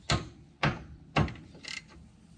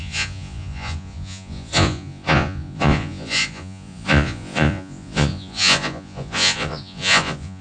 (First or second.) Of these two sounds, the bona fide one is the first